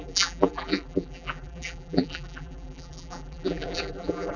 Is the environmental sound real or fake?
fake